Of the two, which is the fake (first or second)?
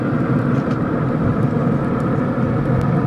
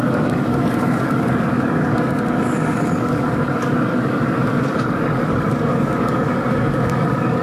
second